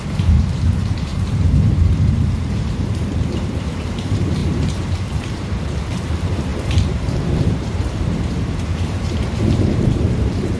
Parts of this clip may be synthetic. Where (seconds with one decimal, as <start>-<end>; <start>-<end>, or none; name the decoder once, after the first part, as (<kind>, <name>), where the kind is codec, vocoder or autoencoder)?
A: 0.0-10.6 (vocoder, BigVGAN v2)